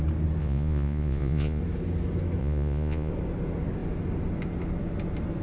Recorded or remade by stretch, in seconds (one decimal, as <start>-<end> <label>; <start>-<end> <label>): 0.0-0.4 recorded; 0.4-1.6 remade; 1.6-2.4 recorded; 2.4-3.1 remade; 3.1-5.4 recorded

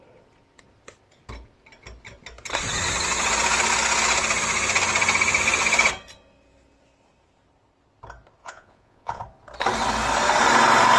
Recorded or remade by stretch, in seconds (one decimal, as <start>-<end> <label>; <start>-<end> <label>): 0.0-8.4 recorded; 8.4-9.2 remade; 9.2-11.0 recorded